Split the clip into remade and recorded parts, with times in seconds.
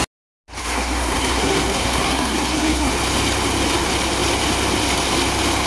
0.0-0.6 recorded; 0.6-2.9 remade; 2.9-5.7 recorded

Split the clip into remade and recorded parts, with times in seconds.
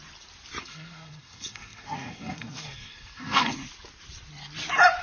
0.0-0.6 recorded; 0.6-3.6 remade; 3.6-5.0 recorded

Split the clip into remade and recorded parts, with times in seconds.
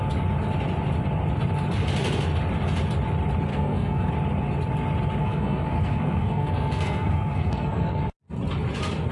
0.0-3.5 recorded; 3.5-4.1 remade; 4.1-5.2 recorded; 5.2-8.0 remade; 8.0-9.1 recorded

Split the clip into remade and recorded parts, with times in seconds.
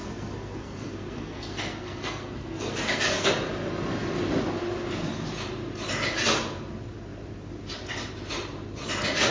0.0-3.3 remade; 3.3-9.3 recorded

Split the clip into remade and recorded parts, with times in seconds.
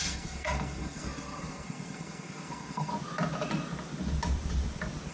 0.0-2.9 remade; 2.9-5.1 recorded